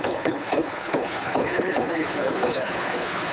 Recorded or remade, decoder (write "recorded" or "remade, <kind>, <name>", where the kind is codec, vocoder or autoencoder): remade, codec, HILCodec